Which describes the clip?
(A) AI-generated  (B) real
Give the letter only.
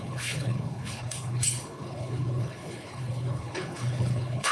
A